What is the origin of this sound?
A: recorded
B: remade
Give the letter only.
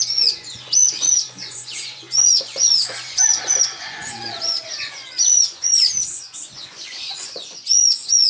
B